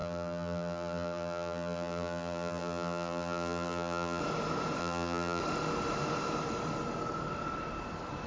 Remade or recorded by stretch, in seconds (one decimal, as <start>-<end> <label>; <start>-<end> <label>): 0.0-4.2 remade; 4.2-4.8 recorded; 4.8-5.4 remade; 5.4-8.3 recorded